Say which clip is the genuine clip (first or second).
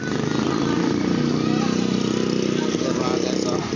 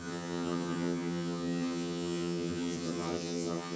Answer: first